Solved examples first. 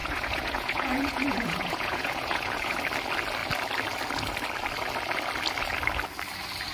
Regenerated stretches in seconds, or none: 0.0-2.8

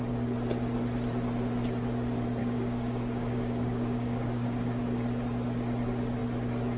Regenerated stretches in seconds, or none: 2.4-4.8